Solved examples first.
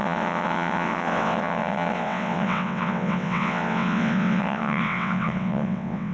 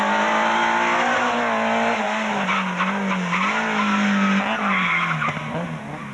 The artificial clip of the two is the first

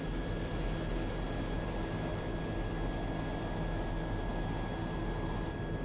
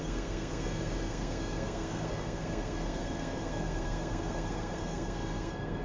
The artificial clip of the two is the second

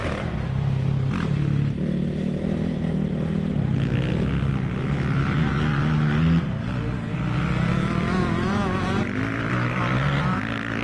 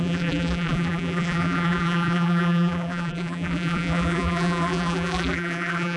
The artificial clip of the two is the second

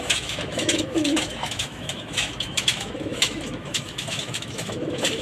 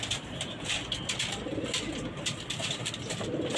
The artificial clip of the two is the first